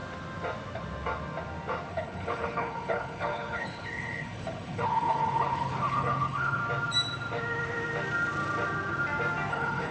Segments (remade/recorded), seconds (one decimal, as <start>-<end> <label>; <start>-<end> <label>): 0.0-1.9 recorded; 1.9-6.6 remade; 6.6-9.5 recorded; 9.5-9.9 remade